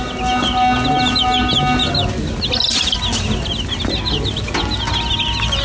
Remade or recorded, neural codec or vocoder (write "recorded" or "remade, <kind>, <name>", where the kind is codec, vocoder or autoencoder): recorded